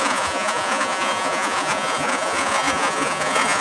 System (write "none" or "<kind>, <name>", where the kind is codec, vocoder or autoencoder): vocoder, Vocos